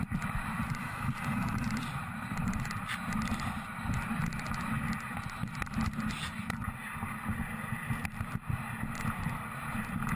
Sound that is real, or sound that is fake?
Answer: real